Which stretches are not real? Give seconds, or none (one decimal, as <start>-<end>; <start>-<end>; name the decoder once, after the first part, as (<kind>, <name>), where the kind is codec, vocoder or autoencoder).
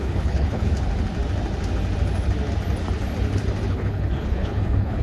0.0-0.7 (codec, HILCodec); 3.7-5.0